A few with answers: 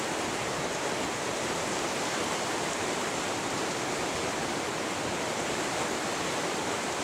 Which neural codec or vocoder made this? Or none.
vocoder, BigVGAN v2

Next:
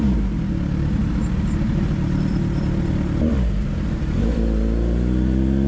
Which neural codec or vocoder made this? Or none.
none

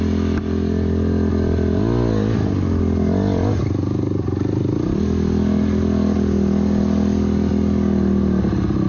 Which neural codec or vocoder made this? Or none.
none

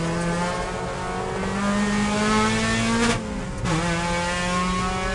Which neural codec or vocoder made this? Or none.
none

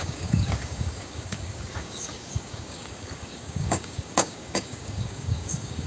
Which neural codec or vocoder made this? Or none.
codec, DAC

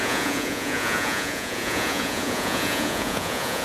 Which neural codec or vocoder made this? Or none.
vocoder, Vocos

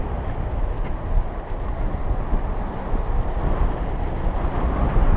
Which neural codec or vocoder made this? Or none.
none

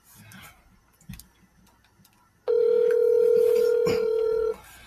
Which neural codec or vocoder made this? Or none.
none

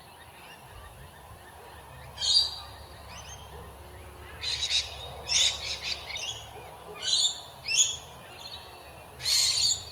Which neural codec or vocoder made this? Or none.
none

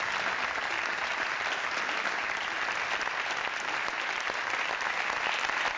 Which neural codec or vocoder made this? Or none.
none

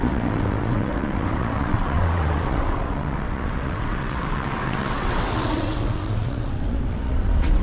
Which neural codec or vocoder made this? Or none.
vocoder, WaveNeXt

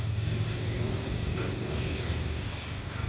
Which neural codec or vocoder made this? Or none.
codec, DAC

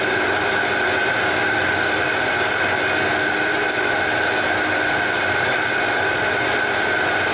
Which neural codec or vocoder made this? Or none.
none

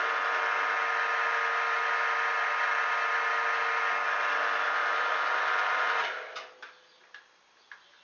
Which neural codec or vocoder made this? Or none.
none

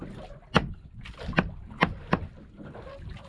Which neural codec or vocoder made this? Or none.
none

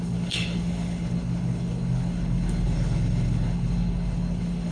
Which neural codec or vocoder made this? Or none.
codec, HILCodec